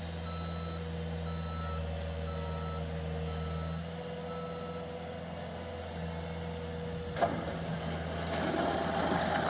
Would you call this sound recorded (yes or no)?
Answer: yes